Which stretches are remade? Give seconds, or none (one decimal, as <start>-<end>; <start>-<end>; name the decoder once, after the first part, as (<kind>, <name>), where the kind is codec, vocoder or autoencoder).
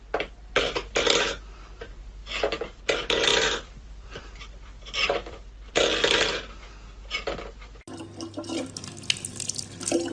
2.2-2.8 (vocoder, BigVGAN v2); 3.3-6.0